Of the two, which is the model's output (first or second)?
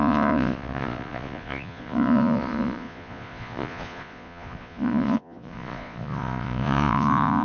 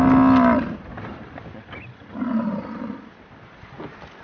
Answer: first